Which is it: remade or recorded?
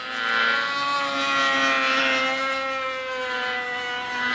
recorded